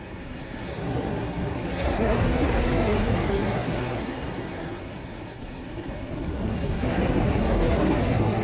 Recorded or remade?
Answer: remade